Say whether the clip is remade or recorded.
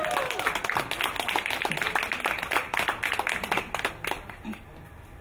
recorded